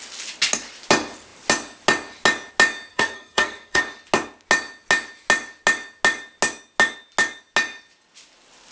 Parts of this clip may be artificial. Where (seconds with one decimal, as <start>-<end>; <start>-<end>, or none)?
2.9-3.8